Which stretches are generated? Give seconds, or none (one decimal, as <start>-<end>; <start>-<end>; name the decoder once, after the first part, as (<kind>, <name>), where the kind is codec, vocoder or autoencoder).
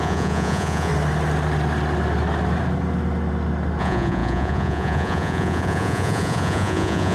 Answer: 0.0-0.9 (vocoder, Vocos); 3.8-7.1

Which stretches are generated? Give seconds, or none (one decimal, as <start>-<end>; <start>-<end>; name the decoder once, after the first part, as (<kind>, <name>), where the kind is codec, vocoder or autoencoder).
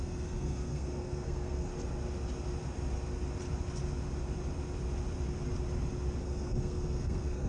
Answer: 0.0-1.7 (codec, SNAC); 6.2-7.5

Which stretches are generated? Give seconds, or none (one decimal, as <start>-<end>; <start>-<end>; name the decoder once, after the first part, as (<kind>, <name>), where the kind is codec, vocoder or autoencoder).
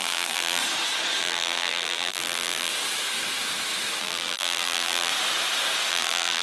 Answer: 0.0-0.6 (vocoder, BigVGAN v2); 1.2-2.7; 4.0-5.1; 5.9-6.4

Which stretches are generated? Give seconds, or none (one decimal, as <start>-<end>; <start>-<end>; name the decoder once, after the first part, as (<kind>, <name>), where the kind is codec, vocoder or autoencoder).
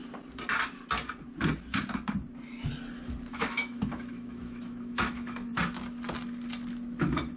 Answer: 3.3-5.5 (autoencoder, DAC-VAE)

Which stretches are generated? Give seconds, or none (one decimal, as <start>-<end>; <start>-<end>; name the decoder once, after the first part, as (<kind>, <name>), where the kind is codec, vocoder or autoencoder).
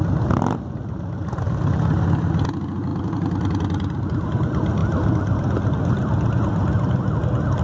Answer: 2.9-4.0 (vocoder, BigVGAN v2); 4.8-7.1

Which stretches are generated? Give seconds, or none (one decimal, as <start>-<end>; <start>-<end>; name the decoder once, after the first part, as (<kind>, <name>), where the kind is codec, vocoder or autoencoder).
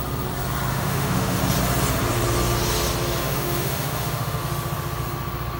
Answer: 0.7-1.4 (autoencoder, DAC-VAE); 3.2-4.4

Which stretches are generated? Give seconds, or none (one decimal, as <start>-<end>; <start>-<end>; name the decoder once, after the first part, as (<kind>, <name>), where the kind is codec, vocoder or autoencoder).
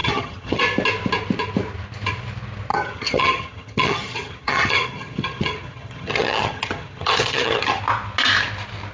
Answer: 0.0-0.6 (vocoder, HiFi-GAN); 2.7-7.8